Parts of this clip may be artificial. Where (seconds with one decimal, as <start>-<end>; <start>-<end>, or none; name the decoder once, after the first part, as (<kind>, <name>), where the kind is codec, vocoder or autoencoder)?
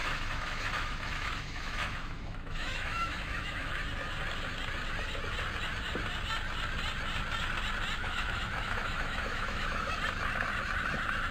0.0-3.7 (autoencoder, DAC-VAE); 8.0-9.9